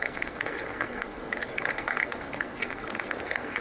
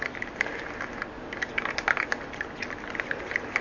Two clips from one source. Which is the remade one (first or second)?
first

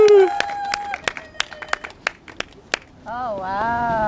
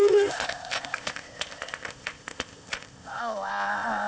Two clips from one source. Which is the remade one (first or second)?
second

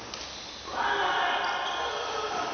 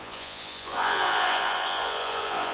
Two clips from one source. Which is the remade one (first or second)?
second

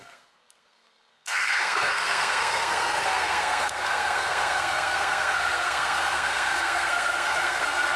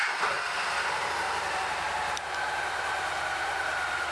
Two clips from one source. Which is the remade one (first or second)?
first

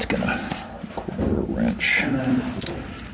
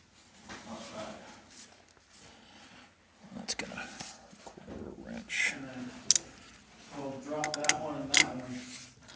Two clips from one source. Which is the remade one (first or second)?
first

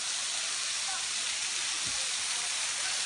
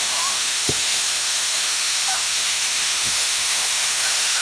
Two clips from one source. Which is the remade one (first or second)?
second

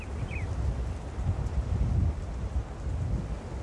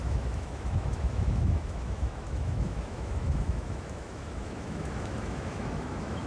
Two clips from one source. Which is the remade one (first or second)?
second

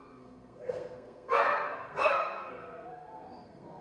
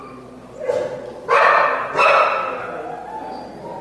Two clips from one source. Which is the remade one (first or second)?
first